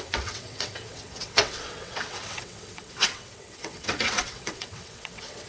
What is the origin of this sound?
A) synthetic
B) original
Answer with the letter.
A